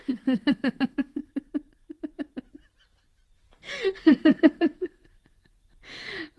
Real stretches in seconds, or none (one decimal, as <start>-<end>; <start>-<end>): 1.2-3.5; 5.0-6.4

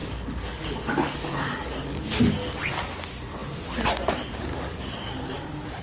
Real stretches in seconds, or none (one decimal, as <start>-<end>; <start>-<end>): 2.3-4.5

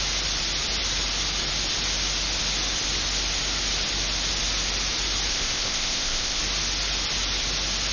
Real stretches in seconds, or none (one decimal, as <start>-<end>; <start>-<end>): 0.0-5.3; 6.4-7.9

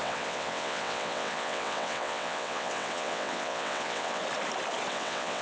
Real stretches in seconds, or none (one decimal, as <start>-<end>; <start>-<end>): 4.2-4.9

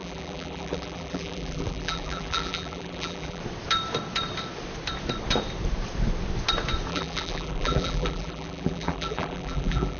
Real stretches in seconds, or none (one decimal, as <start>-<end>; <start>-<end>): 3.4-6.9

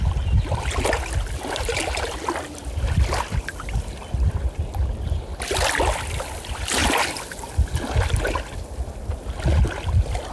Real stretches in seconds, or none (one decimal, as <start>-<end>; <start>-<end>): 0.0-10.3

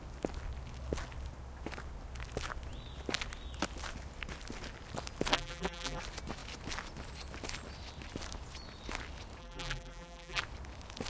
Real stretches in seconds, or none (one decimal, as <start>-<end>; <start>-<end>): 0.0-5.3; 6.0-9.4; 10.4-11.1

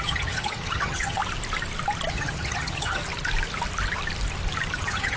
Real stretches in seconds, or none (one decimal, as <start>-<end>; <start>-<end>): 1.2-2.1; 3.0-4.8